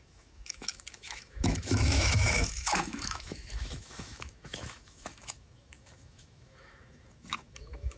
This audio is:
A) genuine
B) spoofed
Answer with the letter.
B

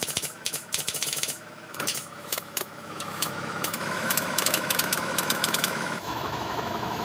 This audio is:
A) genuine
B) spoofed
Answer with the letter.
B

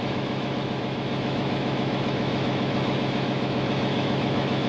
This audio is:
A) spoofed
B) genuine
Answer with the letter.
A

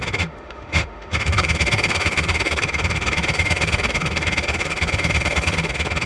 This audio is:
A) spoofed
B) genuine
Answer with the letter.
A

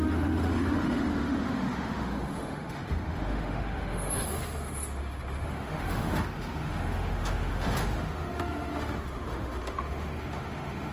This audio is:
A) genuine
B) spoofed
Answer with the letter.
B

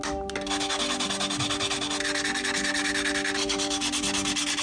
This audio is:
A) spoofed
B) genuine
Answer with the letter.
B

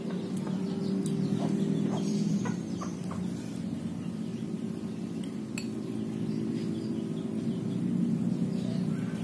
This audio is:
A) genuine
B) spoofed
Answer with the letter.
A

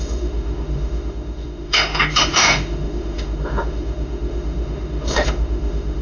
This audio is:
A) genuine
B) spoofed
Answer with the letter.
B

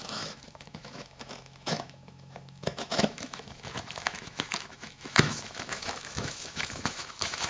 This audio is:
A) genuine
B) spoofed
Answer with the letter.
B